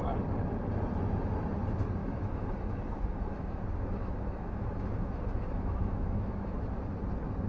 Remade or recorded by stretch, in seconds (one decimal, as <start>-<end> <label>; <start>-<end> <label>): 0.0-2.0 recorded; 2.0-6.5 remade; 6.5-7.5 recorded